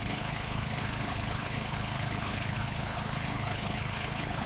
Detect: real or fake fake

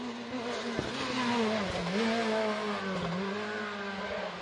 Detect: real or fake real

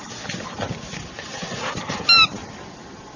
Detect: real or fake real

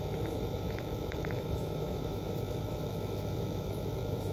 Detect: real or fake fake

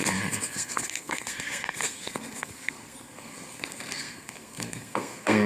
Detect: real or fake fake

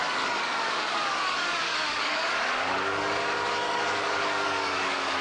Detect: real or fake fake